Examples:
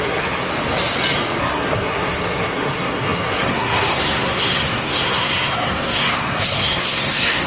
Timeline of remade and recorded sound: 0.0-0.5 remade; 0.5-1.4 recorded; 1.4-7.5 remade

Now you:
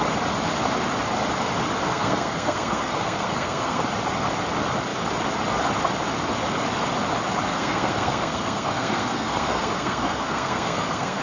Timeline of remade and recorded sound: 0.0-1.9 recorded; 1.9-3.8 remade; 3.8-7.5 recorded; 7.5-11.2 remade

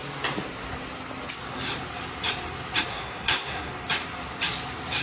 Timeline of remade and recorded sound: 0.0-2.9 recorded; 2.9-3.7 remade; 3.7-5.0 recorded

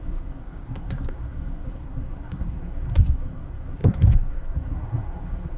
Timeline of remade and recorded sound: 0.0-5.6 remade

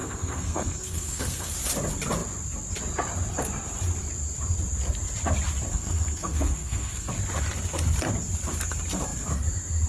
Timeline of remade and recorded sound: 0.0-1.5 remade; 1.5-5.7 recorded; 5.7-7.1 remade; 7.1-9.9 recorded